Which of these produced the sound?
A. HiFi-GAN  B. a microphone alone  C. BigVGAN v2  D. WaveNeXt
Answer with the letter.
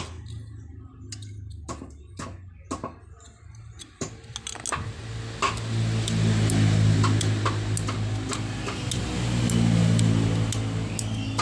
B